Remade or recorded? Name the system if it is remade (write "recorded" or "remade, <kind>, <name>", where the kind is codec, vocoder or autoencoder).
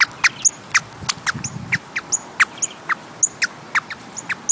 recorded